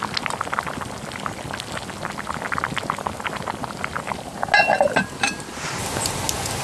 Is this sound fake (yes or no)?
no